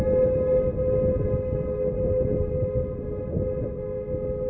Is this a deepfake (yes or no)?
no